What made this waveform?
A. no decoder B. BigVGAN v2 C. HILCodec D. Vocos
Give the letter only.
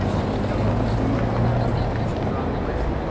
A